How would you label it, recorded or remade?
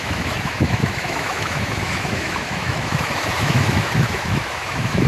remade